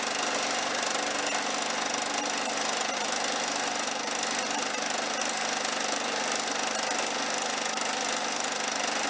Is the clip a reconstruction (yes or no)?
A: no